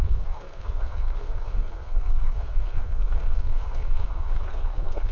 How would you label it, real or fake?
fake